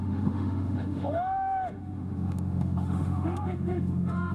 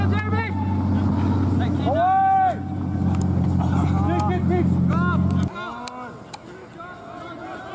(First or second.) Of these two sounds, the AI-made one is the first